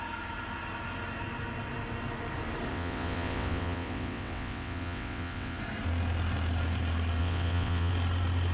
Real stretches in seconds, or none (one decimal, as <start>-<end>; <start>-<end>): 0.0-2.7; 5.6-7.2; 7.9-8.5